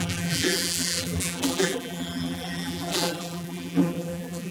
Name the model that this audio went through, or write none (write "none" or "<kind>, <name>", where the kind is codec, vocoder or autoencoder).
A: vocoder, BigVGAN v2